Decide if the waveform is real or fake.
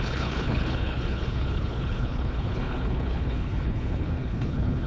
fake